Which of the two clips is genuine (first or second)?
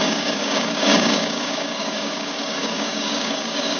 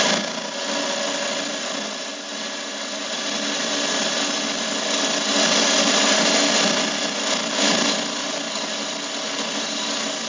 second